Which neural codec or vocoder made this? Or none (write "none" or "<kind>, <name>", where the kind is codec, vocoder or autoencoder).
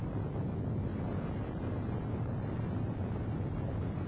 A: none